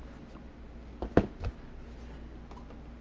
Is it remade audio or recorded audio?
recorded